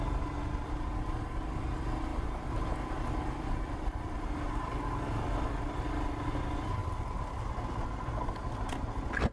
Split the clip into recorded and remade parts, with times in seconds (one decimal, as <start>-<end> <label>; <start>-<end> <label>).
0.0-2.1 recorded; 2.1-4.8 remade; 4.8-6.8 recorded; 6.8-7.5 remade; 7.5-9.3 recorded